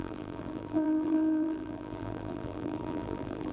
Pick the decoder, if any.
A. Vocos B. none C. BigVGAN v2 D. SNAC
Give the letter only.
C